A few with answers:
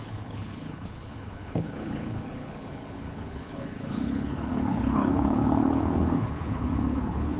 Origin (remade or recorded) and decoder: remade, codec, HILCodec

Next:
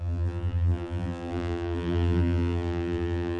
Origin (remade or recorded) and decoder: remade, vocoder, BigVGAN v2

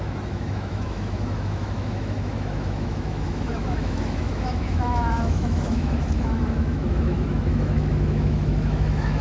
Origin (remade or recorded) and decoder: remade, autoencoder, DAC-VAE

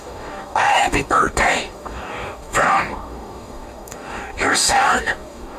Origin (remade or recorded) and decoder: remade, codec, DAC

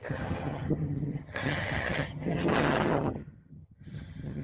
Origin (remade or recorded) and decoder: remade, vocoder, HiFi-GAN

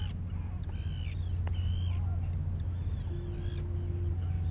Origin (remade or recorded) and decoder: recorded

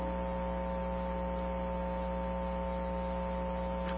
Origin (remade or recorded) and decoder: recorded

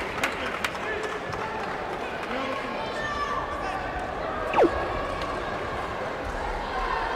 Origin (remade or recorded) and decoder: recorded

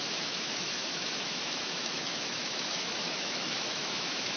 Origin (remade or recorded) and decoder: remade, autoencoder, DAC-VAE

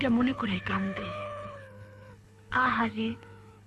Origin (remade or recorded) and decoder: remade, codec, HILCodec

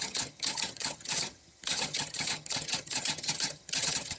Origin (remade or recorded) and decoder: remade, vocoder, HiFi-GAN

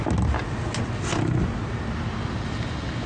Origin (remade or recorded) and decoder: recorded